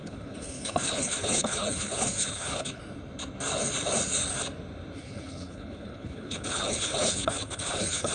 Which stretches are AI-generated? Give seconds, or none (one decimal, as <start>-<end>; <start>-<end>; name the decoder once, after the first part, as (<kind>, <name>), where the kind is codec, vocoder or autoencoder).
0.0-2.8 (codec, HILCodec); 5.0-8.1

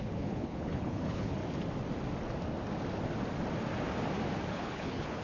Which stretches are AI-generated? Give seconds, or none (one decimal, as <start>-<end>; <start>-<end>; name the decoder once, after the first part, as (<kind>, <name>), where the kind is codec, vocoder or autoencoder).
0.0-1.4 (codec, HILCodec); 4.5-5.2

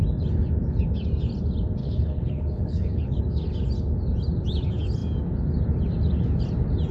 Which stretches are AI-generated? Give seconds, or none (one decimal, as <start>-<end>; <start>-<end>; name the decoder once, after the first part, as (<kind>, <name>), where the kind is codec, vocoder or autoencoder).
1.8-3.2 (codec, HILCodec)

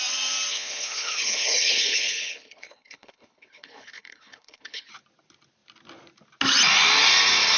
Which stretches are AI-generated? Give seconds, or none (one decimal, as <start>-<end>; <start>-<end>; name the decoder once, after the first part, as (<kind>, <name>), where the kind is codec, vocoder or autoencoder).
0.5-4.9 (codec, HILCodec)